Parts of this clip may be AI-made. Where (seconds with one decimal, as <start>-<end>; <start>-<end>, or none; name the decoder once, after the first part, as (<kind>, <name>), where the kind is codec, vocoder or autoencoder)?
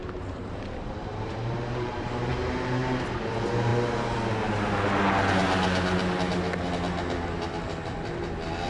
0.0-2.3 (vocoder, BigVGAN v2)